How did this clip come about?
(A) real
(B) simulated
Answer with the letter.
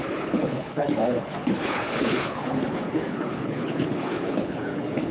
B